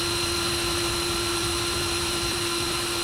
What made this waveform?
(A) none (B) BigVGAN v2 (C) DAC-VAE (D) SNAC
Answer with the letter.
B